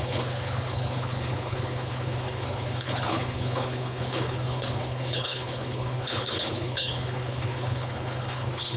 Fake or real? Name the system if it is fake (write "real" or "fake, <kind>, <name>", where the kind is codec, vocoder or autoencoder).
fake, codec, HILCodec